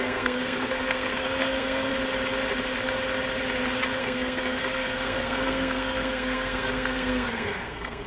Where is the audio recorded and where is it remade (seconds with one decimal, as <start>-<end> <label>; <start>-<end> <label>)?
0.0-1.9 remade; 1.9-4.0 recorded; 4.0-8.1 remade